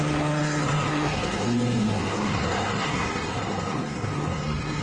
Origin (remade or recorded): remade